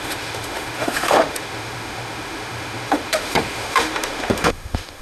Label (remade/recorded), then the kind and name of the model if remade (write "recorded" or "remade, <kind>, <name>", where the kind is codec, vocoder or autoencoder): remade, autoencoder, DAC-VAE